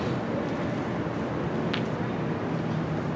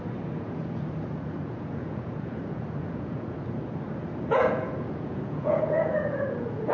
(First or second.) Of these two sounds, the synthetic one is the second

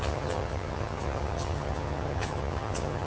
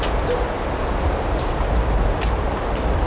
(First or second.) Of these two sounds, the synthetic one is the first